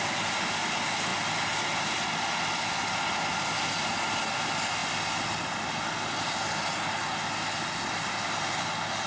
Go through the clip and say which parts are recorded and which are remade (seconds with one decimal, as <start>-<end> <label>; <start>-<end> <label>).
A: 0.0-9.1 recorded